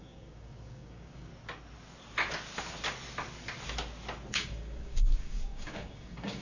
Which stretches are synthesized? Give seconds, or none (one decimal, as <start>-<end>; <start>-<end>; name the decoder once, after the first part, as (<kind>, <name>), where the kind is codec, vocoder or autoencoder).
0.0-1.3 (codec, DAC); 4.3-6.4